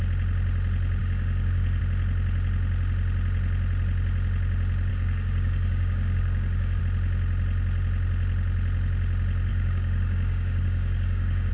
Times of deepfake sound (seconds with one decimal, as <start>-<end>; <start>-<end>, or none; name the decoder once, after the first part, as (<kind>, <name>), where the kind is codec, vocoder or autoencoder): 1.0-1.8 (codec, DAC); 4.9-6.8; 9.5-11.5